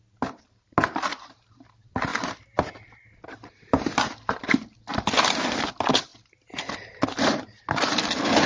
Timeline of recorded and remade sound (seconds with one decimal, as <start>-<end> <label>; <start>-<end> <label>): 0.0-8.5 recorded